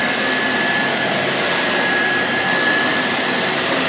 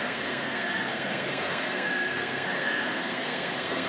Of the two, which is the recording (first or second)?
first